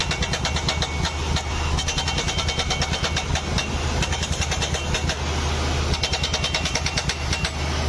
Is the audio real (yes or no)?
yes